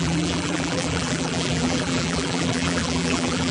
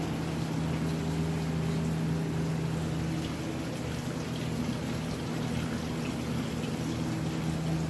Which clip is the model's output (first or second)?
first